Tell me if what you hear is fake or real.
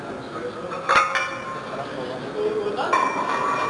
real